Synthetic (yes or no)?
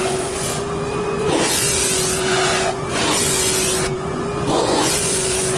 yes